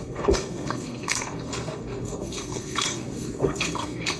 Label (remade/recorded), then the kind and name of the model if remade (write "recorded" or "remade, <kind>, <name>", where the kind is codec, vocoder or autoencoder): remade, codec, SNAC